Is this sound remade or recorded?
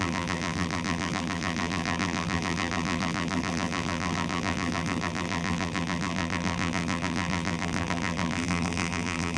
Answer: remade